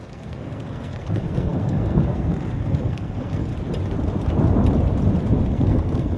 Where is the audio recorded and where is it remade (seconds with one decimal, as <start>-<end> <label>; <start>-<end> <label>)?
0.0-3.5 remade; 3.5-5.5 recorded; 5.5-6.2 remade